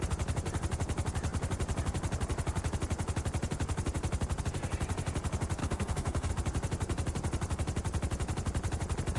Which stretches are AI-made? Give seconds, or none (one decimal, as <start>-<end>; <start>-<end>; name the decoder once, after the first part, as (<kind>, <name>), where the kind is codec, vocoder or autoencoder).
5.6-6.3 (codec, SNAC)